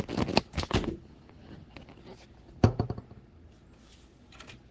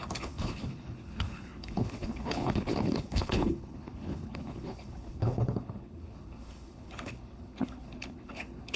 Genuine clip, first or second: first